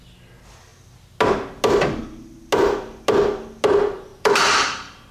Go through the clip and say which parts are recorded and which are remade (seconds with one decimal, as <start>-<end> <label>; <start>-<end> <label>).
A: 0.0-4.1 recorded; 4.1-5.1 remade